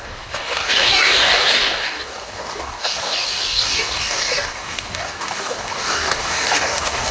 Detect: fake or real fake